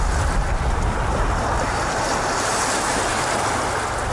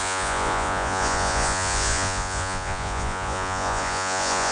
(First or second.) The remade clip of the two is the second